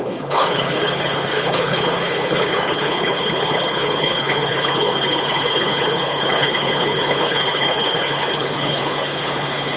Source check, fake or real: fake